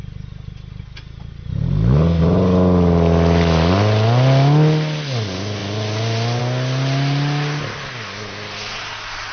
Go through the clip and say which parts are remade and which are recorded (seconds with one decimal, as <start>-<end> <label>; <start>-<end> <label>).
0.0-9.3 recorded